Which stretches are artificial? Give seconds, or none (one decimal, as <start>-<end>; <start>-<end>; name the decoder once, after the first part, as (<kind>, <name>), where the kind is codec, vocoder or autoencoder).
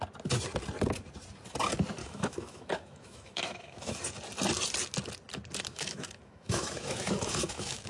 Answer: 2.0-4.0 (autoencoder, DAC-VAE); 5.7-7.9